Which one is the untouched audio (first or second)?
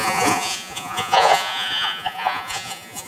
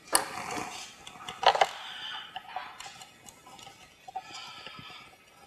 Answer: second